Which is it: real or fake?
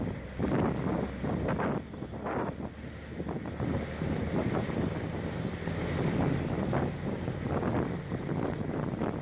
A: real